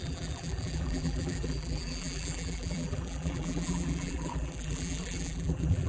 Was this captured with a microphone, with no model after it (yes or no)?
no